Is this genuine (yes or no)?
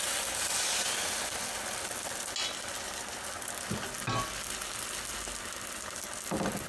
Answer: yes